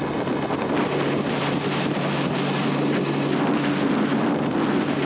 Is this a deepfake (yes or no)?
no